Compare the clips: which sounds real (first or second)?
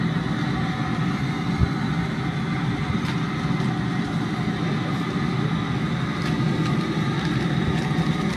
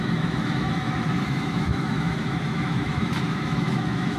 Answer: first